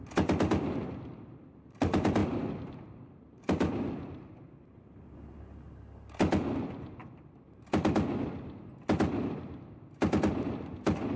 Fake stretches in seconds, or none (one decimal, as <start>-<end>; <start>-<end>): none